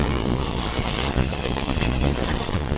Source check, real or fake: fake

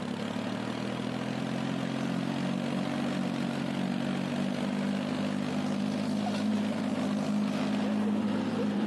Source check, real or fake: real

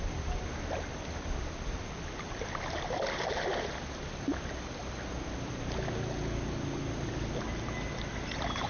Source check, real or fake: real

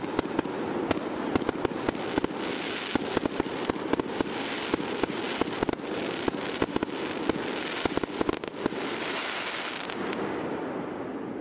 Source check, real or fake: real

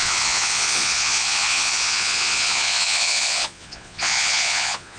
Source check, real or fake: fake